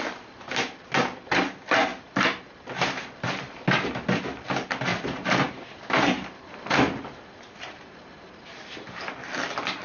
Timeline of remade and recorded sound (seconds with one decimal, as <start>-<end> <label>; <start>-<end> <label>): 0.0-1.9 recorded; 1.9-4.5 remade; 4.5-4.9 recorded; 4.9-9.2 remade; 9.2-9.8 recorded

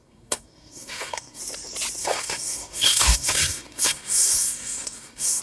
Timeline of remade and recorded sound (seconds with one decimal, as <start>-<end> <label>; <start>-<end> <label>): 0.0-1.4 remade; 1.4-2.0 recorded; 2.0-5.4 remade

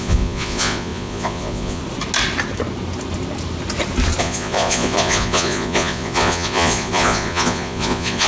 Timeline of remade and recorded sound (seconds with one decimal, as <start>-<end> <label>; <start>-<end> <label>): 0.0-1.8 remade; 1.8-4.2 recorded; 4.2-8.3 remade

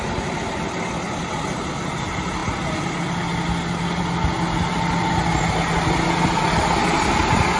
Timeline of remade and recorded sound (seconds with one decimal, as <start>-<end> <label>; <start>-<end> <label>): 0.0-7.6 recorded